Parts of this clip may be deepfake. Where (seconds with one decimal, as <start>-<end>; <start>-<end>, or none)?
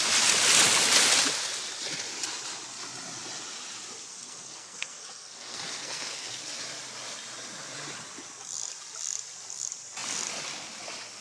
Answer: 4.1-6.3